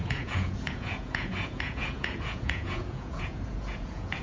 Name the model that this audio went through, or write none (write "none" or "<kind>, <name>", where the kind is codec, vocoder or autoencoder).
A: vocoder, Vocos